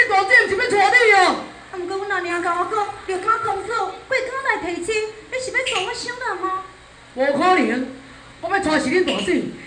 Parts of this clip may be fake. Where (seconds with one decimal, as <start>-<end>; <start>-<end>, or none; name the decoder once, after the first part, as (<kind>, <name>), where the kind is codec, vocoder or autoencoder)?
2.3-3.8 (vocoder, WaveNeXt)